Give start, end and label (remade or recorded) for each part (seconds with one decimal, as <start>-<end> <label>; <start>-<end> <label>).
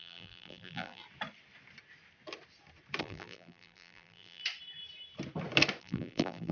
0.0-1.0 remade; 1.0-3.0 recorded; 3.0-4.4 remade; 4.4-5.8 recorded; 5.8-6.5 remade